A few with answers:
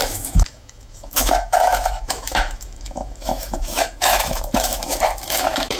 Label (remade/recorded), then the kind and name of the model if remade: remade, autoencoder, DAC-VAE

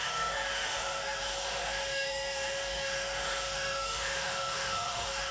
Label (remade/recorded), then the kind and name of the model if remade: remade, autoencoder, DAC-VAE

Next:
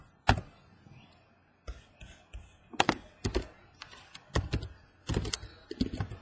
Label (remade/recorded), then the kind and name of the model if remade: recorded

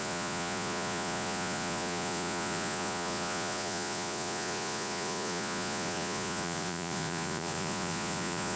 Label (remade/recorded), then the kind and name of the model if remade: remade, vocoder, Vocos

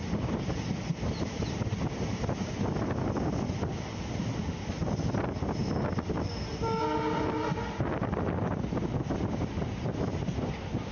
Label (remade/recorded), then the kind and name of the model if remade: recorded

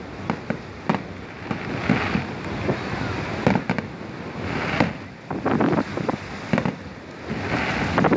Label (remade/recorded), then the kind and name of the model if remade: recorded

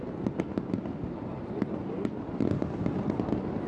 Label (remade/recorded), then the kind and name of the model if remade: recorded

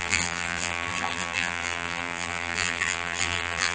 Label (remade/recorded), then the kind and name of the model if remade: remade, vocoder, BigVGAN v2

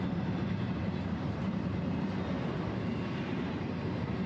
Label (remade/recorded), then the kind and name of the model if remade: remade, vocoder, BigVGAN v2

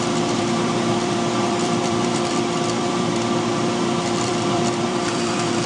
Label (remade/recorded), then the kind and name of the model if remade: remade, vocoder, BigVGAN v2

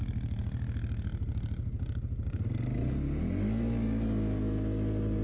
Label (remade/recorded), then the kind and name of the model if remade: recorded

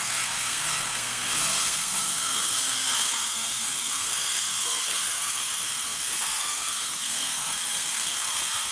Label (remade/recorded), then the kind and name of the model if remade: remade, codec, SNAC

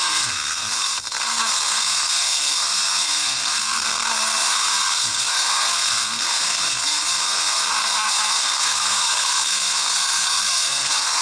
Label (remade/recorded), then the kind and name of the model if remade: remade, codec, SNAC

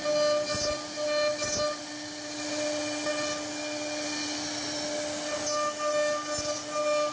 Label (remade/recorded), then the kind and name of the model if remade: recorded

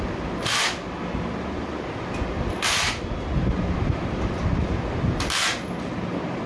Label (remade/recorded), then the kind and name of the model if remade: recorded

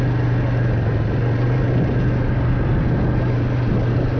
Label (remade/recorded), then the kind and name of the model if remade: recorded